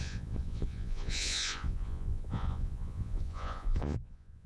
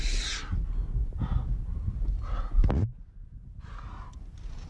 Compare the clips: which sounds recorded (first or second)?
second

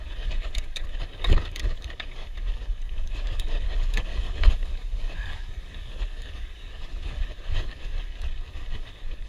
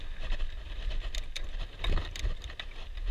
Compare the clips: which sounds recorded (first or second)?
second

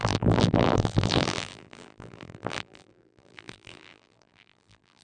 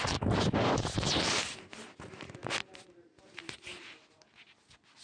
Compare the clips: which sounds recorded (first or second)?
second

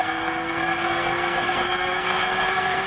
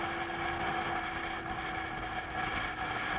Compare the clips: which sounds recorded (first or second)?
second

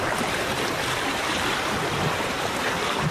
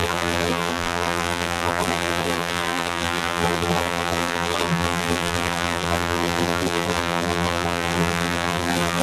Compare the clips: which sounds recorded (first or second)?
first